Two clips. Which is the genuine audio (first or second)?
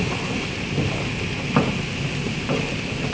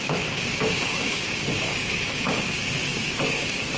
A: first